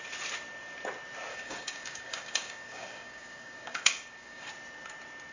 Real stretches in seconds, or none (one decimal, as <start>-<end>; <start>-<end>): 0.0-1.3; 4.5-5.3